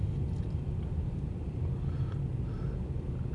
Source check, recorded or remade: recorded